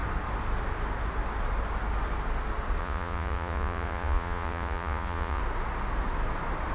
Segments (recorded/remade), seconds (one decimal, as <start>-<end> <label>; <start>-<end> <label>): 0.0-2.8 recorded; 2.8-5.4 remade; 5.4-6.7 recorded